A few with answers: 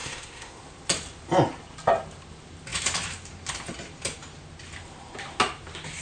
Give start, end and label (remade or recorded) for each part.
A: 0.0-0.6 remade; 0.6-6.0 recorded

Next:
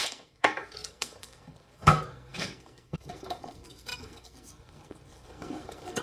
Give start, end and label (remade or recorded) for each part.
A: 0.0-6.0 remade

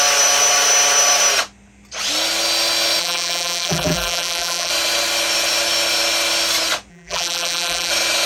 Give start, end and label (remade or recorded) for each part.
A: 0.0-3.0 recorded; 3.0-4.7 remade; 4.7-6.9 recorded; 6.9-7.9 remade; 7.9-8.3 recorded

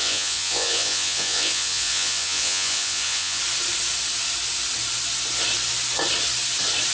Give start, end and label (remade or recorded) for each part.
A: 0.0-3.4 remade; 3.4-6.9 recorded

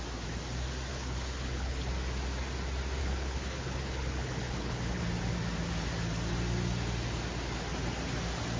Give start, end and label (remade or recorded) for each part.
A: 0.0-0.9 recorded; 0.9-1.9 remade; 1.9-3.0 recorded; 3.0-5.0 remade; 5.0-8.6 recorded

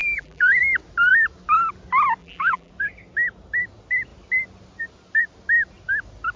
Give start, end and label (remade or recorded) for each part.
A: 0.0-0.6 remade; 0.6-2.2 recorded; 2.2-2.7 remade; 2.7-6.4 recorded